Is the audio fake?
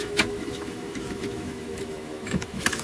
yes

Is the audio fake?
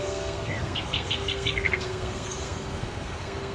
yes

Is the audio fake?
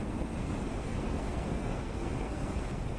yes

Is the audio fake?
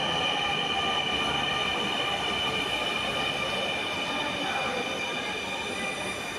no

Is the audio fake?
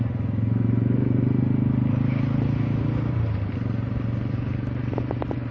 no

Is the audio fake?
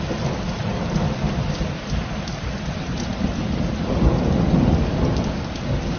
no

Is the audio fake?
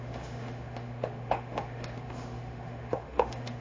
yes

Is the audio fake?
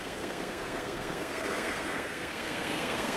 yes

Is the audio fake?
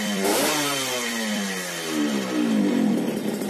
yes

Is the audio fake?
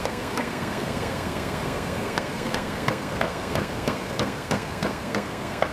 yes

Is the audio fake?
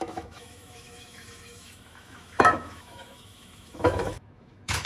yes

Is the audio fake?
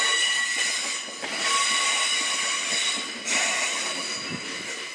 no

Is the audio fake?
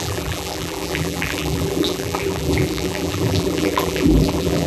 yes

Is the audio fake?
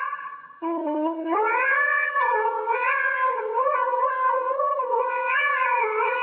yes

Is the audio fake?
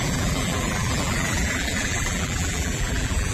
yes